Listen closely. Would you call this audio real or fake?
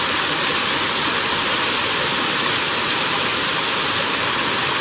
real